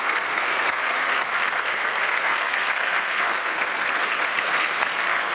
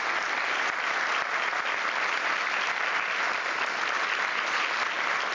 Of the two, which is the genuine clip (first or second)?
second